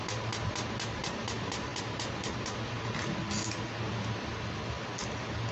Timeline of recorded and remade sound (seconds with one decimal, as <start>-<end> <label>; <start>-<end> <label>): 0.0-5.5 recorded